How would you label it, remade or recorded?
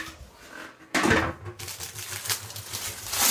recorded